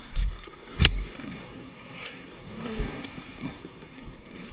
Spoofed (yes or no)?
yes